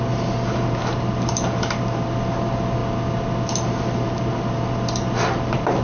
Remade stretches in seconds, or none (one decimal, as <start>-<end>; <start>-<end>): none